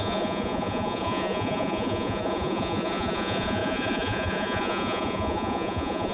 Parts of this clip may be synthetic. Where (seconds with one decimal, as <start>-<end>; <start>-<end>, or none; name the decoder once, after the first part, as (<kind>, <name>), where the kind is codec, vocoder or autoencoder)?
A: 0.0-6.1 (vocoder, Vocos)